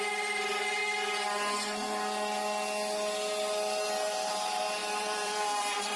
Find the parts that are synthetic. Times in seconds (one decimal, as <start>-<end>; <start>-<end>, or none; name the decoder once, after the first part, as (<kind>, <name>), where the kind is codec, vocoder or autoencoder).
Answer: 4.8-6.0 (vocoder, BigVGAN v2)